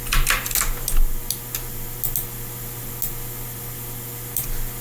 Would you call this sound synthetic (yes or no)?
no